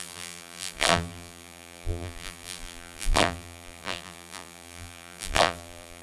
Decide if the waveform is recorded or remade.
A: remade